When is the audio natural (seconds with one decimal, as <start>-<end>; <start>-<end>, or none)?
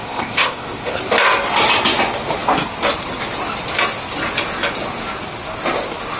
1.0-6.2